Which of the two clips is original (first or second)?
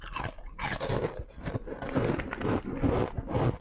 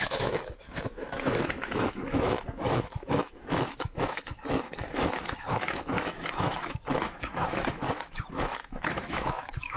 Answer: first